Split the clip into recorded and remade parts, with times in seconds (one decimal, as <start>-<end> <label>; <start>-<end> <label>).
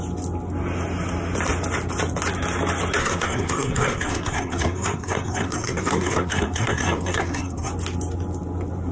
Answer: 0.0-3.0 recorded; 3.0-7.7 remade; 7.7-8.9 recorded